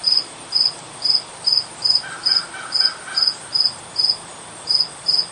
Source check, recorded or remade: recorded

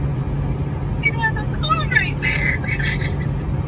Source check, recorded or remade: recorded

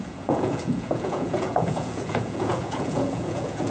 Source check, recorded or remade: remade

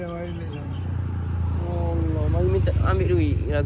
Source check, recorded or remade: recorded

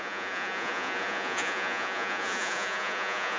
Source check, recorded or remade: remade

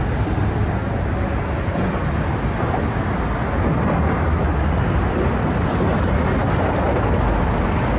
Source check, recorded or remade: recorded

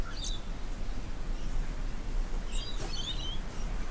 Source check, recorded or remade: recorded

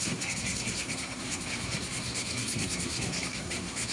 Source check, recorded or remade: remade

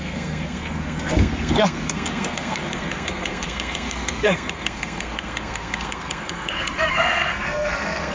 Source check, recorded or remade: remade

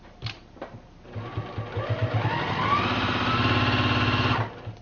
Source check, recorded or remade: recorded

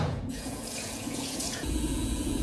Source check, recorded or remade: remade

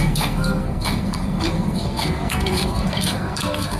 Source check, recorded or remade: remade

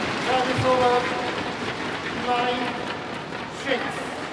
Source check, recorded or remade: recorded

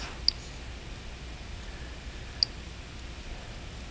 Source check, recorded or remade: recorded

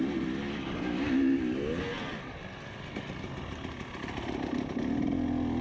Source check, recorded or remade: recorded